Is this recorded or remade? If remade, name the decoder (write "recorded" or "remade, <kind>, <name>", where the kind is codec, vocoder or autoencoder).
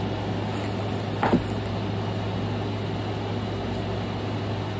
recorded